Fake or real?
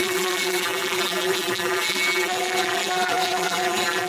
fake